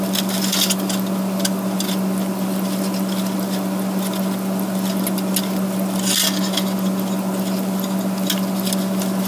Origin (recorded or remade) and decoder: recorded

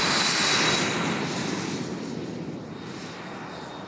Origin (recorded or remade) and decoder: recorded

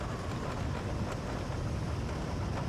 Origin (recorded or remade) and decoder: recorded